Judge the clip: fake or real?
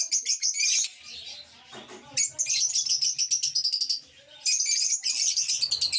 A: real